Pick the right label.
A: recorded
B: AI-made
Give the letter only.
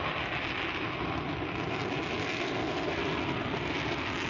A